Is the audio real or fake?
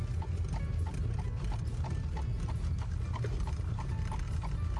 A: real